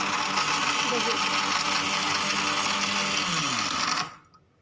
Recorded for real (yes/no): yes